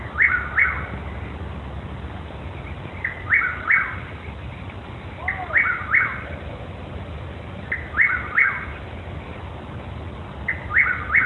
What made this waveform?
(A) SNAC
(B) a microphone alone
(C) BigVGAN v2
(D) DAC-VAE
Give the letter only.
B